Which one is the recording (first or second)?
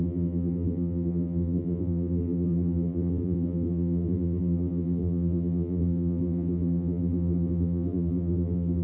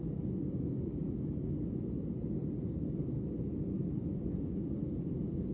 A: second